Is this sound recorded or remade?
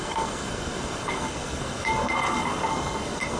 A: remade